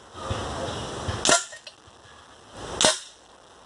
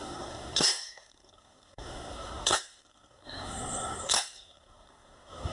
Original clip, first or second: first